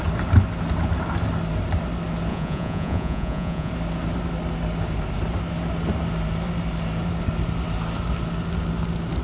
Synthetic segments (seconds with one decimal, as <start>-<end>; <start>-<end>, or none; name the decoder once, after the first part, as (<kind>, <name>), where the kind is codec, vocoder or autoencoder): 2.3-3.7 (vocoder, Vocos)